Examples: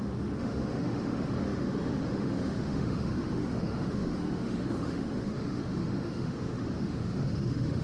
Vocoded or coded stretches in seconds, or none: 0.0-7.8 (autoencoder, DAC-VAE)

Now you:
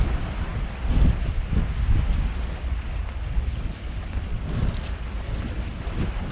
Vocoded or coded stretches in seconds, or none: 0.0-6.3 (vocoder, BigVGAN v2)

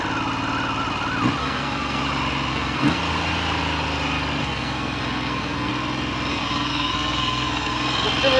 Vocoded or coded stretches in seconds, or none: 1.4-2.0 (codec, SNAC); 2.5-3.0; 4.4-5.7; 6.3-7.8

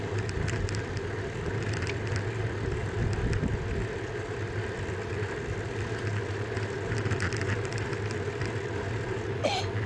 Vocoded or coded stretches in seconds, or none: none

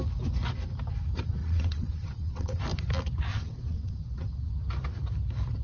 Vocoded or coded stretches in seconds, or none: 1.4-2.6 (vocoder, WaveNeXt); 3.3-4.5

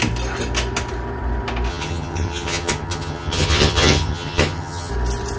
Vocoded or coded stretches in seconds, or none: 1.7-4.9 (vocoder, HiFi-GAN)

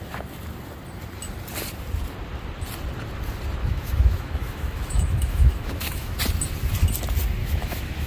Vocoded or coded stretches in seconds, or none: 3.6-6.2 (autoencoder, DAC-VAE); 7.4-8.1